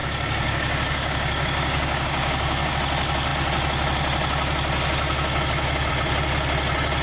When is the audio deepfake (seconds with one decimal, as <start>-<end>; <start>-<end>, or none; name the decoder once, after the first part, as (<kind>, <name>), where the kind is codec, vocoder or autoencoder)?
0.0-2.7 (codec, DAC)